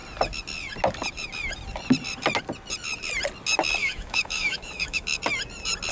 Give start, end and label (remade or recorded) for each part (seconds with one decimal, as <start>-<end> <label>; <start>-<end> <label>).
0.0-3.8 recorded; 3.8-5.2 remade; 5.2-5.9 recorded